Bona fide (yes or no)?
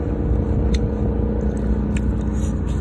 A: yes